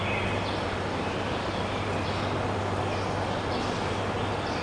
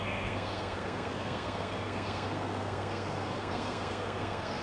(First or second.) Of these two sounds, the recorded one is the first